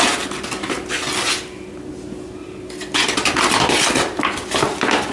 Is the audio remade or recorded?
recorded